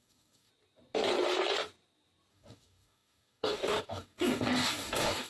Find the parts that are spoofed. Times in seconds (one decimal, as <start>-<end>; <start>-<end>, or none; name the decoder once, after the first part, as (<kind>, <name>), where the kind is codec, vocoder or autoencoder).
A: 0.0-0.5 (codec, DAC); 2.3-5.3